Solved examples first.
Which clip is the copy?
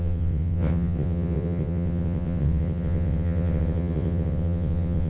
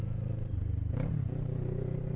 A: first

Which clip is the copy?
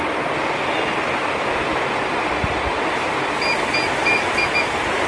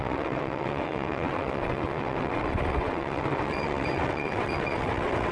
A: second